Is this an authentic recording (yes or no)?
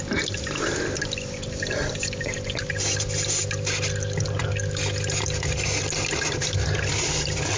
yes